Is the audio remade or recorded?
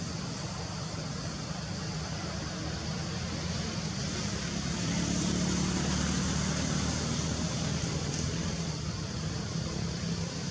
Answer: recorded